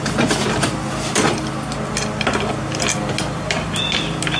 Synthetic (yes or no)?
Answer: no